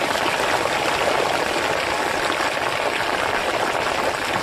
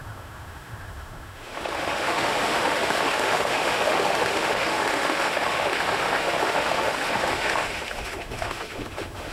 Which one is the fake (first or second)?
second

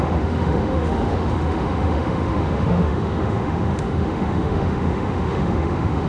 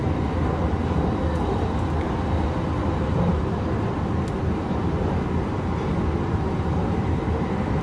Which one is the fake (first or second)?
first